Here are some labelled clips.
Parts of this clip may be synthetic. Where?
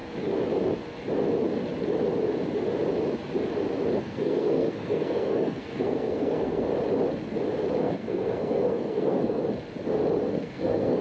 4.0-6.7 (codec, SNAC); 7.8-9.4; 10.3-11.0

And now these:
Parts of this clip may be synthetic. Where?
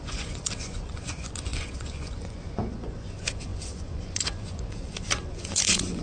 0.0-6.0 (vocoder, Vocos)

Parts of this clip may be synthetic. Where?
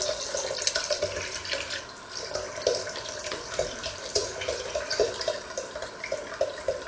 4.2-5.0 (vocoder, Vocos)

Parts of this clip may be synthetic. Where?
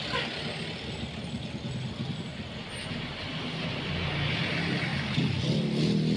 none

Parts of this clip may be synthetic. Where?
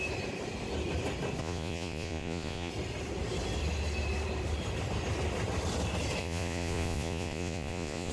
1.4-2.7 (vocoder, Vocos); 6.2-8.1